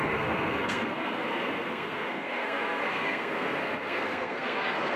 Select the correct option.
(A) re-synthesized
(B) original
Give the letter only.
A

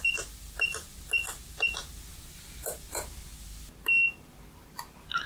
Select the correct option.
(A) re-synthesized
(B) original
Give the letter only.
B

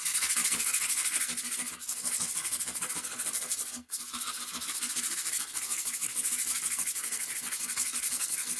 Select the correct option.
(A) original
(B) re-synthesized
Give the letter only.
B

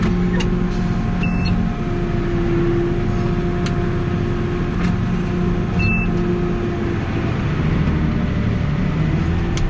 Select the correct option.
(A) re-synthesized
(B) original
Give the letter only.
B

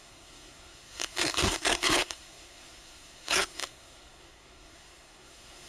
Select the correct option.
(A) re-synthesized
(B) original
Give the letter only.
A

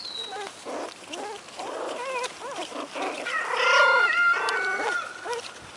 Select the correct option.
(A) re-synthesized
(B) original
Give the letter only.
B